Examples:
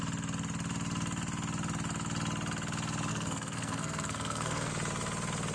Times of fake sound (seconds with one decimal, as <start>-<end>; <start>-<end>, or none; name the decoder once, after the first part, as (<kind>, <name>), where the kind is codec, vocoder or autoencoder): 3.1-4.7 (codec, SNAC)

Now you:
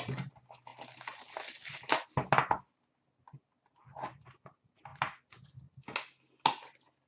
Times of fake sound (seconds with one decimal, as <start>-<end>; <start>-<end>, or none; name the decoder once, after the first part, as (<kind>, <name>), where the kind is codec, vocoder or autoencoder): none

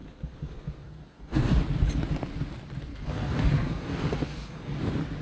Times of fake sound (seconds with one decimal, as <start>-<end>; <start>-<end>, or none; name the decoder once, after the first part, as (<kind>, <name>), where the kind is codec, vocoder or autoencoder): 0.0-1.6 (codec, SNAC); 2.9-4.8

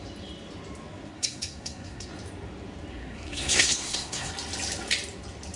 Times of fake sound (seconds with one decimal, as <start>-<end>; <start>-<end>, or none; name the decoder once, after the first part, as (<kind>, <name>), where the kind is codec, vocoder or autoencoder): 1.1-2.1 (codec, SNAC); 2.9-4.3

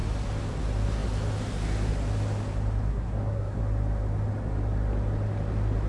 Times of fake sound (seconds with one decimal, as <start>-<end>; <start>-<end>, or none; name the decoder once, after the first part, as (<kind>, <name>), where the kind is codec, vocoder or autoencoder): 2.9-3.6 (codec, SNAC)